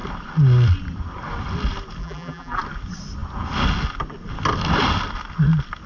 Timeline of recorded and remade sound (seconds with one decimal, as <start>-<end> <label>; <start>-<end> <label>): 0.0-2.0 recorded; 2.0-2.6 remade; 2.6-5.9 recorded